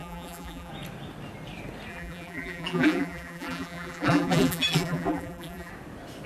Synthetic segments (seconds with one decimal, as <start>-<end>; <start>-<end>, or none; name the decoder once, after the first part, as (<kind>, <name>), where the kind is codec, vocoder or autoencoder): 0.0-0.7 (vocoder, BigVGAN v2); 1.9-5.7